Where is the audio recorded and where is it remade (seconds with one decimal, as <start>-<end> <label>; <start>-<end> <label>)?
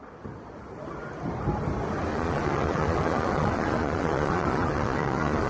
0.0-2.1 recorded; 2.1-5.5 remade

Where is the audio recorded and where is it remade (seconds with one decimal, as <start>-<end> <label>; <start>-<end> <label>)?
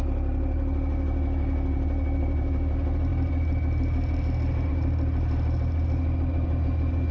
0.0-7.1 recorded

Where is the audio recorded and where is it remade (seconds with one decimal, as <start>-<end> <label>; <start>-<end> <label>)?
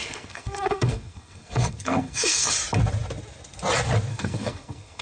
0.0-2.5 remade; 2.5-4.1 recorded; 4.1-5.0 remade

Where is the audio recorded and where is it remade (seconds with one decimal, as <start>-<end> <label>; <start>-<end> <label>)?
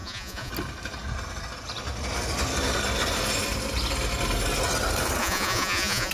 0.0-0.5 remade; 0.5-5.2 recorded; 5.2-6.1 remade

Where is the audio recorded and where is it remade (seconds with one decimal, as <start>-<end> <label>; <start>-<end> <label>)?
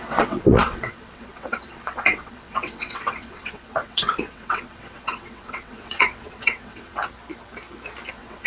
0.0-7.0 remade; 7.0-8.1 recorded; 8.1-8.5 remade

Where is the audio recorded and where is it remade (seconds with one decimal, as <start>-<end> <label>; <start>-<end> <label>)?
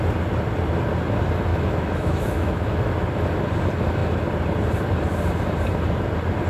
0.0-1.5 recorded; 1.5-2.9 remade; 2.9-6.5 recorded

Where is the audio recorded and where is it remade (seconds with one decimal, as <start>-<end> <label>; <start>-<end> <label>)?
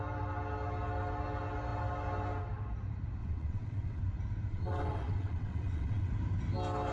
0.0-3.2 recorded; 3.2-4.0 remade; 4.0-4.5 recorded; 4.5-6.1 remade; 6.1-6.9 recorded